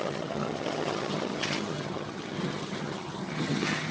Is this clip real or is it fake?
fake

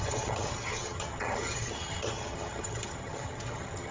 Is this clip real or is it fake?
fake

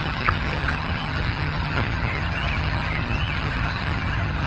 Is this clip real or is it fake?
fake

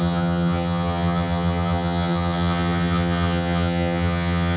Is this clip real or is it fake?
fake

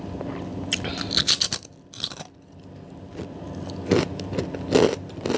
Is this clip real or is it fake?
real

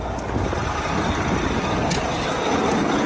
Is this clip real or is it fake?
real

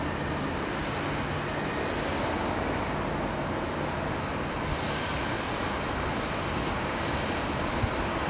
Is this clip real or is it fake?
real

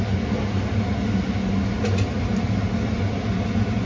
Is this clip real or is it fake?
real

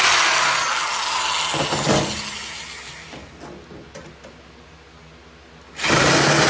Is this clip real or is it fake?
real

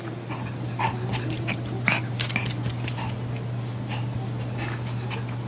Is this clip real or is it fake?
real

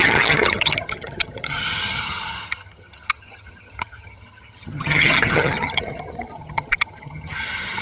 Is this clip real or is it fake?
fake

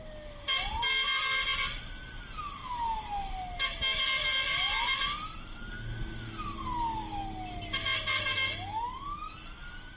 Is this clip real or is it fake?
real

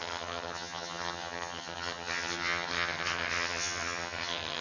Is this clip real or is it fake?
fake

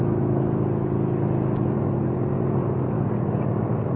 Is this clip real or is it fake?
real